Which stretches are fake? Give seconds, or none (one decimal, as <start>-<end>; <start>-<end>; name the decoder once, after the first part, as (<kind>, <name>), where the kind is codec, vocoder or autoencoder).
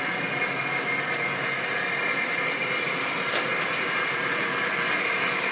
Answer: none